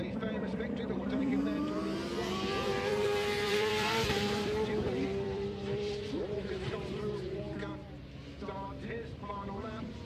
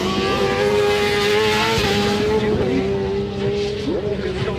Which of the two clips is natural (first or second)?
second